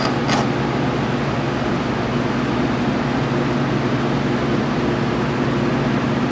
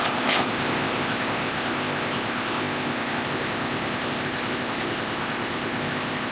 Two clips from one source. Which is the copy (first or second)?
second